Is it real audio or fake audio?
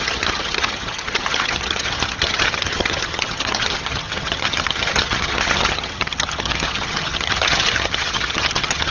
fake